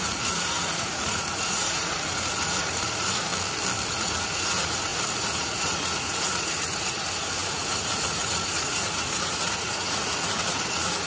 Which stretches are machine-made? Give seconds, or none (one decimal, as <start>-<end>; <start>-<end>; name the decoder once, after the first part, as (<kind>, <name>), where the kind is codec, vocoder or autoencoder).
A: 0.0-3.3 (vocoder, Vocos); 3.9-11.1